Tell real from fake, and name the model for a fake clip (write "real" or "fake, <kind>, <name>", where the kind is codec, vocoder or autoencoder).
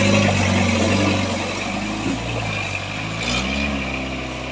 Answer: real